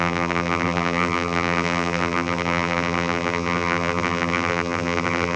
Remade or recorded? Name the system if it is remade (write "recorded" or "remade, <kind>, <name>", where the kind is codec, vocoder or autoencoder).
remade, vocoder, BigVGAN v2